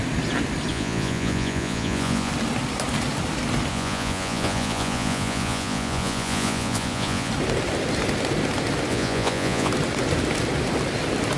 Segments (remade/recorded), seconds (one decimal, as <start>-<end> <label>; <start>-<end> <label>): 0.0-0.7 recorded; 0.7-2.3 remade; 2.3-3.7 recorded; 3.7-7.3 remade; 7.3-8.9 recorded; 8.9-9.7 remade; 9.7-11.4 recorded